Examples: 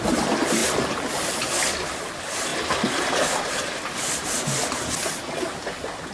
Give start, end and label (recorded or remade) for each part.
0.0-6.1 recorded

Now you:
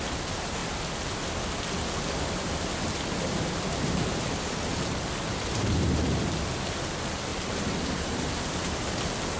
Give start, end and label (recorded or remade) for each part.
0.0-5.3 recorded; 5.3-6.2 remade; 6.2-7.3 recorded; 7.3-9.0 remade; 9.0-9.4 recorded

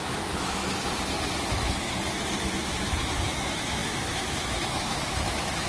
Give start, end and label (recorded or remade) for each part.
0.0-0.6 remade; 0.6-2.4 recorded; 2.4-5.7 remade

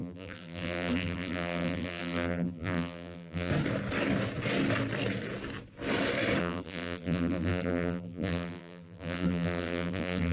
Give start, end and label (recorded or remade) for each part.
0.0-3.5 remade; 3.5-6.4 recorded; 6.4-10.3 remade

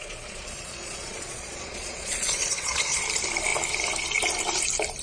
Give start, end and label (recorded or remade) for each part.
0.0-3.0 remade; 3.0-5.0 recorded

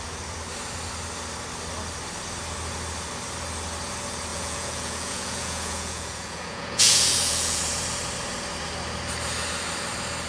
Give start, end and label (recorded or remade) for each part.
0.0-4.3 recorded; 4.3-7.6 remade; 7.6-10.3 recorded

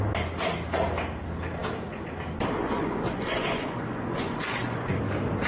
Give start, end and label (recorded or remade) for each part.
0.0-2.6 recorded; 2.6-5.0 remade; 5.0-5.5 recorded

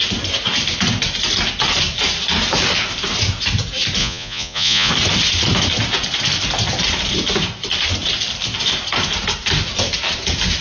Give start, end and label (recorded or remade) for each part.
0.0-4.0 recorded; 4.0-4.9 remade; 4.9-10.6 recorded